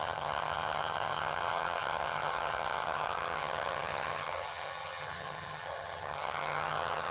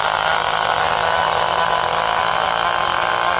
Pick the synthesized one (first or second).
first